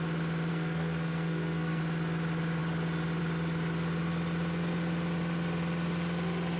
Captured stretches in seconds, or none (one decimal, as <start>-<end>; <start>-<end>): 0.0-0.5; 1.8-6.6